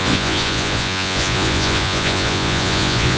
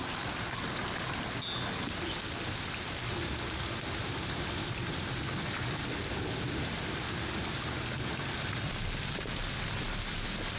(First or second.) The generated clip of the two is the first